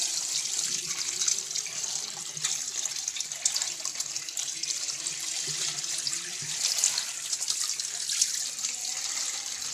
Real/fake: fake